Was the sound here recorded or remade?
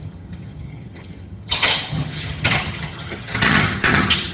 remade